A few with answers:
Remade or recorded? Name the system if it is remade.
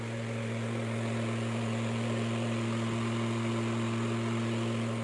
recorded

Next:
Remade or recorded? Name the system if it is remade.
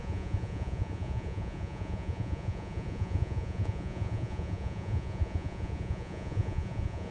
remade, vocoder, Vocos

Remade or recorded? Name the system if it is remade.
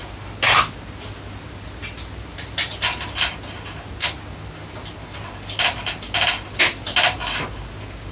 recorded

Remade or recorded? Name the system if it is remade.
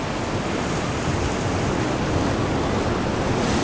recorded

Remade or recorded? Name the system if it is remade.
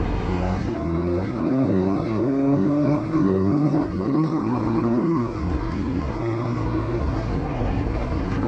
remade, codec, SNAC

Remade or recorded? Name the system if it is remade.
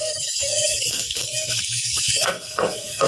remade, codec, SNAC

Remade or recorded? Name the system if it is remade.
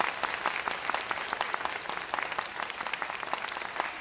recorded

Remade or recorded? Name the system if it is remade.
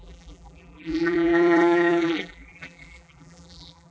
remade, vocoder, BigVGAN v2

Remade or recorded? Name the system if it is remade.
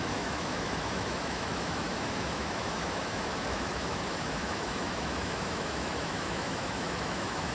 remade, autoencoder, DAC-VAE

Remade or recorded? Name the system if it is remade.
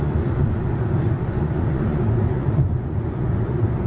remade, vocoder, Vocos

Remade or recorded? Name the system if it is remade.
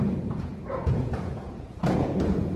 remade, vocoder, Vocos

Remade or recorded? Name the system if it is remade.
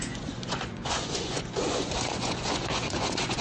remade, vocoder, Vocos